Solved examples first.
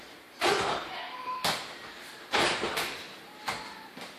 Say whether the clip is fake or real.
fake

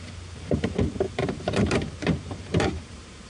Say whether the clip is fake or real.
fake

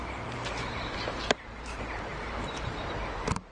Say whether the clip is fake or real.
fake